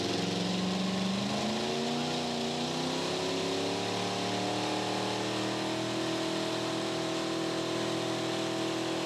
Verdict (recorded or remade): recorded